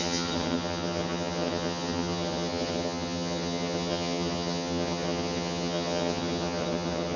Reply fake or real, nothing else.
fake